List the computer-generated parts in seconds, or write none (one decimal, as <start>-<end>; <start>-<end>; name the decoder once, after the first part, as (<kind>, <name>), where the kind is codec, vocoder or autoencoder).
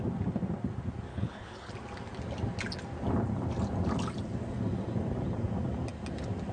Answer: 1.1-1.7 (codec, HILCodec)